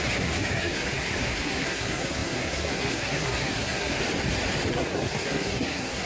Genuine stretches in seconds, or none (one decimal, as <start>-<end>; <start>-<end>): 4.0-4.7